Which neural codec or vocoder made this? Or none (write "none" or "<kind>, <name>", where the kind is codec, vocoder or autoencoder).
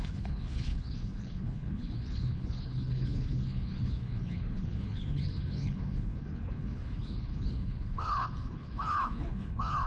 codec, HILCodec